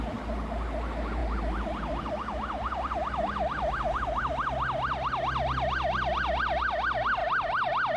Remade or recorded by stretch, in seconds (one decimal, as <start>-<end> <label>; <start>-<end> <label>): 0.0-7.2 recorded; 7.2-8.0 remade